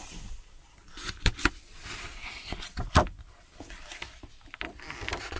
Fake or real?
fake